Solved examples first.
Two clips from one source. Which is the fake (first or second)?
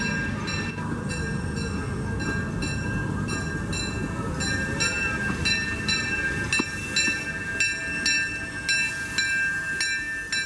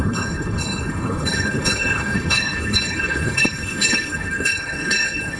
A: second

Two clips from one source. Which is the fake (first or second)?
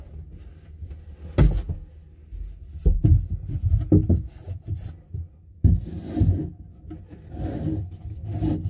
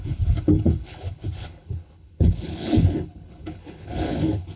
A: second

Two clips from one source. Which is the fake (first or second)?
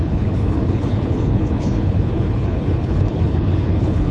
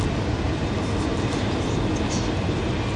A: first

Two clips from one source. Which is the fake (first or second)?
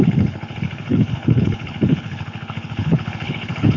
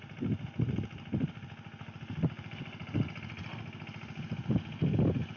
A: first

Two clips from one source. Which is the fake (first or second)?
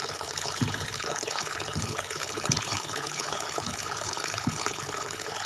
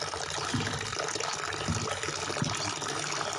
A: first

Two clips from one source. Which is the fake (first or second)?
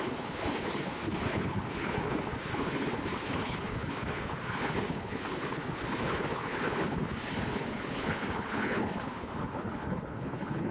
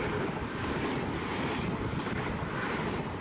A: first